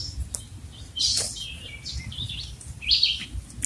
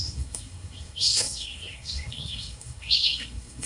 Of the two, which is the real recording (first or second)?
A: first